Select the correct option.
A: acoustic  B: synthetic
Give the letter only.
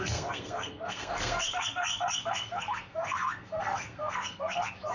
B